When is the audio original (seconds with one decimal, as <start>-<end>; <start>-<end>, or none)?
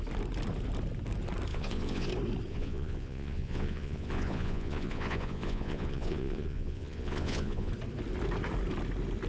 0.0-1.5; 2.1-2.5; 7.7-9.3